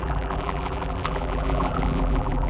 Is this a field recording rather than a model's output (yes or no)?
no